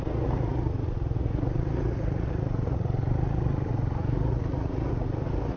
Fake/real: fake